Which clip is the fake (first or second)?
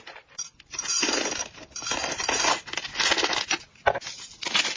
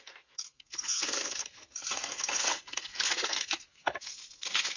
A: second